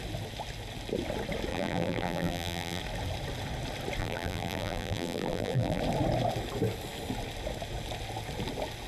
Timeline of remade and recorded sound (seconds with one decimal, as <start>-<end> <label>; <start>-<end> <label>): 0.0-1.5 recorded; 1.5-2.8 remade; 2.8-4.0 recorded; 4.0-5.8 remade; 5.8-8.9 recorded